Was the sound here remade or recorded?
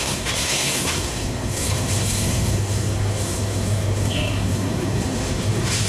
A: remade